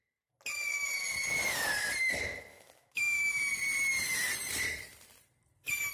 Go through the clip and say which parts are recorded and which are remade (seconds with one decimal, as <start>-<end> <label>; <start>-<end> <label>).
0.0-2.5 recorded; 2.5-3.5 remade; 3.5-5.9 recorded